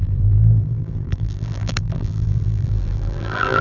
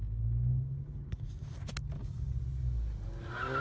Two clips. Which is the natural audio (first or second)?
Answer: second